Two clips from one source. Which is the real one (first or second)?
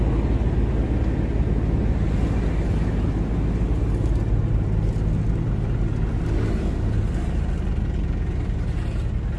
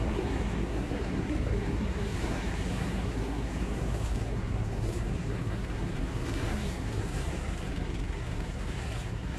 first